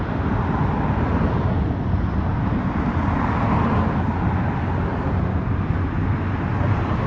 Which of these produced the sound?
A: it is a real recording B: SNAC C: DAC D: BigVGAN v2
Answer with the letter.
A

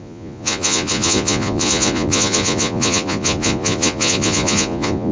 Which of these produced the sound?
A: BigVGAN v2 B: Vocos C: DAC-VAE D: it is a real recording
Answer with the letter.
B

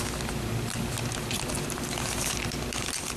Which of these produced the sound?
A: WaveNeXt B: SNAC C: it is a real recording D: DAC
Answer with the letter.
C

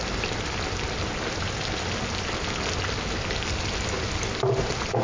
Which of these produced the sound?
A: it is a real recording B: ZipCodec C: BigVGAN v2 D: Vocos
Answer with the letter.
A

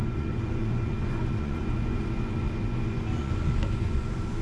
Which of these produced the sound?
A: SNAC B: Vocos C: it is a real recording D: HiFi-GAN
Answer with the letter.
B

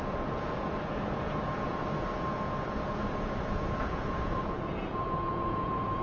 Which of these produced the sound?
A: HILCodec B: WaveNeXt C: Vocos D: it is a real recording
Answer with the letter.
C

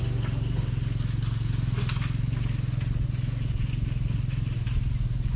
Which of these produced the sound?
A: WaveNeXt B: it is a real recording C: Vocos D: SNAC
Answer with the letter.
B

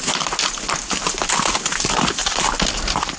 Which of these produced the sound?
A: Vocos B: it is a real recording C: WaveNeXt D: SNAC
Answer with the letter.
B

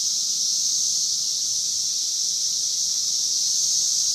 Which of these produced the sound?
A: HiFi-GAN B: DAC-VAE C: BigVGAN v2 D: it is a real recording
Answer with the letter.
D